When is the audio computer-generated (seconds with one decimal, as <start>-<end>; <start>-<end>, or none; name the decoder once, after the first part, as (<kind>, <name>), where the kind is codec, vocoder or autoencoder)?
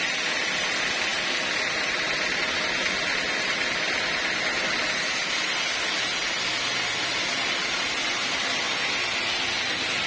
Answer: none